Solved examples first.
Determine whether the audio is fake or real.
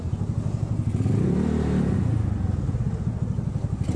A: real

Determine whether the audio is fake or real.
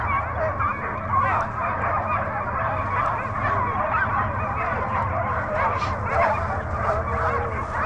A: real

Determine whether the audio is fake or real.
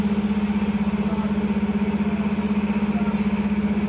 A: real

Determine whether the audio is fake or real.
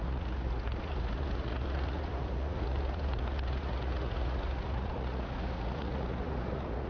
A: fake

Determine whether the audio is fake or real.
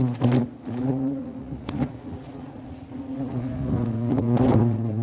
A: fake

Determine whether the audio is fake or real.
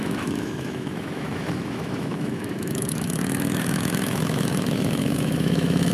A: fake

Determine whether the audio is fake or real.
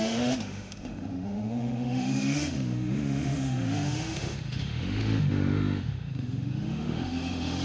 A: fake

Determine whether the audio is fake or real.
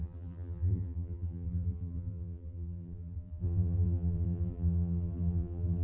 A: fake